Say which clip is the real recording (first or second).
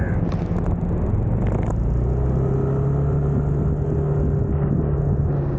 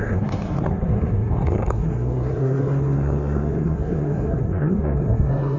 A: first